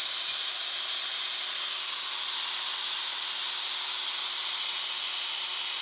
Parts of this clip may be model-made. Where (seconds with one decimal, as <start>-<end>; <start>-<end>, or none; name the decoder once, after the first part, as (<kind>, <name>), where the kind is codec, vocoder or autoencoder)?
none